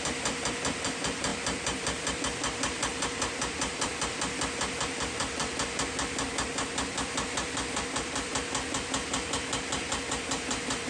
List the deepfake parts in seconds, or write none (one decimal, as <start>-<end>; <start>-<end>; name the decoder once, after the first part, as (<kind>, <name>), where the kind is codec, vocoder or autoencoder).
0.0-10.9 (vocoder, BigVGAN v2)